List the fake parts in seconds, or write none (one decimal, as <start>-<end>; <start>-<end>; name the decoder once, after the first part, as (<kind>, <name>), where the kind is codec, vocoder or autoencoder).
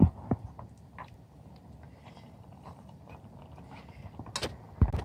2.0-3.0 (vocoder, BigVGAN v2)